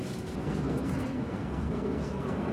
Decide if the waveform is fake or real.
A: fake